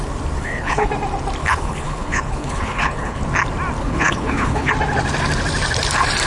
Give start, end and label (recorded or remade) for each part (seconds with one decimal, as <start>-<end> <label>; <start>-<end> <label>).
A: 0.0-0.4 recorded; 0.4-0.9 remade; 0.9-1.4 recorded; 1.4-3.2 remade; 3.2-3.8 recorded; 3.8-4.7 remade; 4.7-6.3 recorded